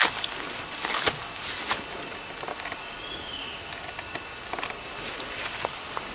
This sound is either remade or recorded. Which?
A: recorded